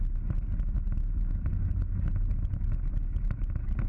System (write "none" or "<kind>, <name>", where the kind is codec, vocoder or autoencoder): none